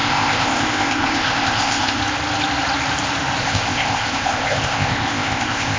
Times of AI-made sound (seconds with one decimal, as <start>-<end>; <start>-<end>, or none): 0.0-2.0; 3.4-5.8